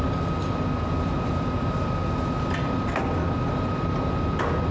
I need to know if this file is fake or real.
real